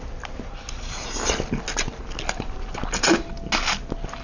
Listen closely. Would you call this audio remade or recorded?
recorded